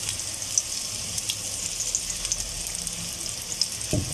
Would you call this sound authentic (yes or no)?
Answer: yes